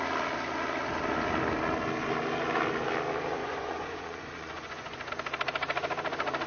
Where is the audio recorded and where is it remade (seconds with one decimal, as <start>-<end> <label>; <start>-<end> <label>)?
0.0-3.4 recorded; 3.4-5.1 remade; 5.1-6.5 recorded